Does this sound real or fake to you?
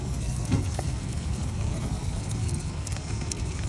fake